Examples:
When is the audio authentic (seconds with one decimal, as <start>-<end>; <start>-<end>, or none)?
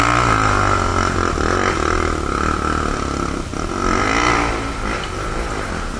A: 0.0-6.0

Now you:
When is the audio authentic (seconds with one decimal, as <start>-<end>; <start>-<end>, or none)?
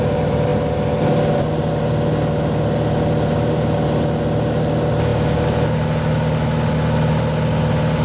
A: 0.0-8.0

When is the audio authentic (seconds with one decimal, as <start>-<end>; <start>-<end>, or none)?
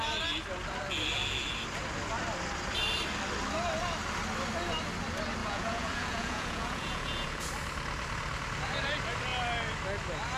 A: 0.0-5.4; 7.5-10.4